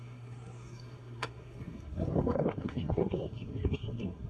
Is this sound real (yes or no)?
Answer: no